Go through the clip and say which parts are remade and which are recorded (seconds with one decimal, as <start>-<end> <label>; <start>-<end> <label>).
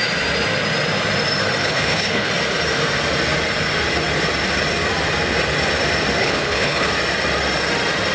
0.0-1.6 recorded; 1.6-2.3 remade; 2.3-6.2 recorded; 6.2-6.9 remade; 6.9-8.1 recorded